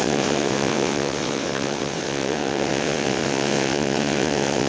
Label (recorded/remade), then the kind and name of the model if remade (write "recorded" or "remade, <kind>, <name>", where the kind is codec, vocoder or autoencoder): remade, vocoder, WaveNeXt